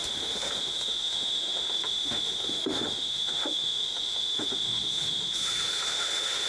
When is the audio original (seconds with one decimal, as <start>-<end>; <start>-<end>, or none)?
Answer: none